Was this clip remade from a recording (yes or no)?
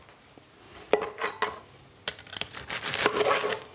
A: no